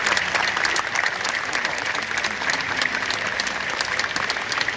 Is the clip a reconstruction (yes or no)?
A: no